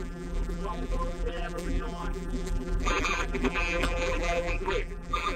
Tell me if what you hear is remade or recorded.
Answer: remade